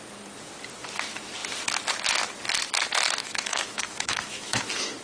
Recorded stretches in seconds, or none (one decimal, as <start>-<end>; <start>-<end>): 0.0-3.2; 4.6-5.0